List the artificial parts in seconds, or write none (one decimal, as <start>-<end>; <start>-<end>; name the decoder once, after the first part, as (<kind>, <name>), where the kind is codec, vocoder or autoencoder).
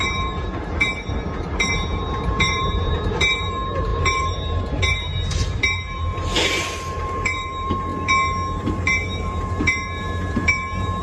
0.0-7.9 (vocoder, BigVGAN v2); 8.6-11.0